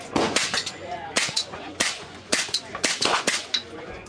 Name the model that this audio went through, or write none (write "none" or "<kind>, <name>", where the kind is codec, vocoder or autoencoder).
vocoder, Vocos